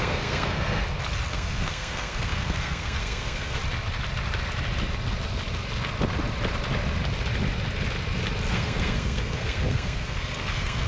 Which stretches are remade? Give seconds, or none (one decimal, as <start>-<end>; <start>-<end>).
0.0-0.8; 1.3-3.6; 8.5-10.9